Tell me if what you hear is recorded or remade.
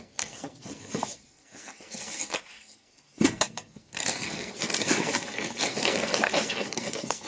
remade